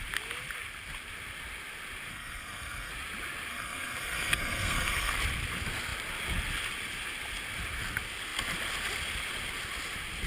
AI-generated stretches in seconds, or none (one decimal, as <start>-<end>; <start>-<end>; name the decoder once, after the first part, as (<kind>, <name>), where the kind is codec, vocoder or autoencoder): 2.1-2.9 (codec, SNAC); 3.5-5.1